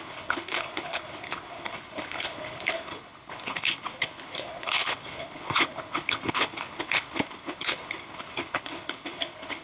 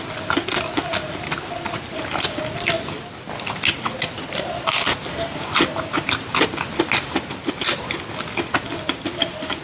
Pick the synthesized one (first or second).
first